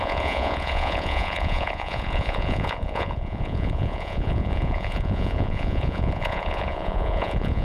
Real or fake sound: fake